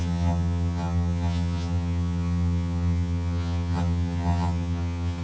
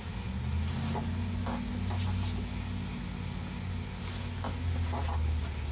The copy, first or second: first